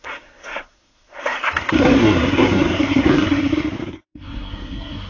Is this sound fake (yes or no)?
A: yes